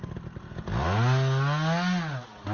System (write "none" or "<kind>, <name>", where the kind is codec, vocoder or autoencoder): none